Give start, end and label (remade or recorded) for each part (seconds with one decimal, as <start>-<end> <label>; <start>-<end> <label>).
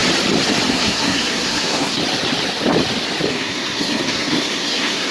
0.0-0.7 recorded; 0.7-2.0 remade; 2.0-3.3 recorded; 3.3-5.1 remade